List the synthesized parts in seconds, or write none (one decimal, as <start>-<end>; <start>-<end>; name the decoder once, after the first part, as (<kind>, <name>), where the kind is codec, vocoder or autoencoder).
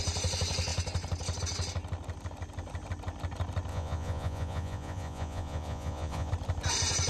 3.7-6.3 (vocoder, Vocos)